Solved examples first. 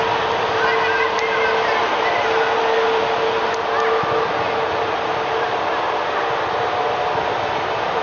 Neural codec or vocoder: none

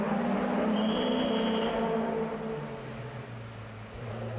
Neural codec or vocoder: none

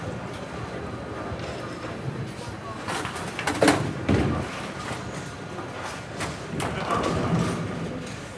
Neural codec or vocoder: none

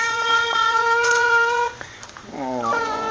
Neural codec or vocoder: vocoder, Vocos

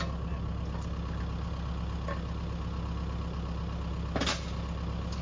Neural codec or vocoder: none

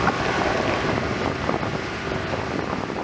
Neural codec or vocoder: none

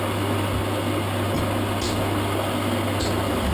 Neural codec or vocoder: none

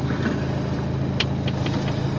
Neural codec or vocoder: none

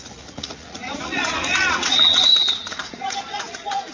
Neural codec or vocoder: vocoder, Vocos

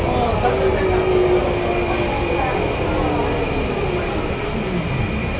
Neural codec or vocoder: none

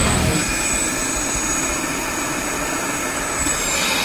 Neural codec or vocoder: none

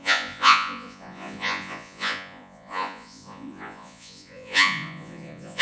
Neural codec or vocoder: vocoder, Vocos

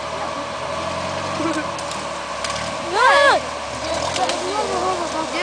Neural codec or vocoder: none